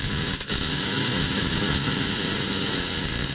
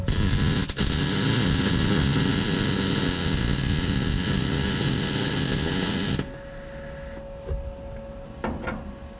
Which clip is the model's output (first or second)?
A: first